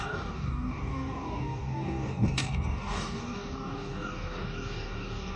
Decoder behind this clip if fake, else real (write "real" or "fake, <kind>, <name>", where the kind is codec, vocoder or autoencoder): fake, codec, DAC